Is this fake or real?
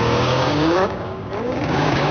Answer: fake